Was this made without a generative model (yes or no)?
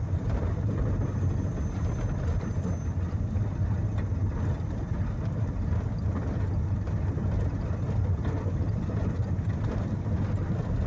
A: yes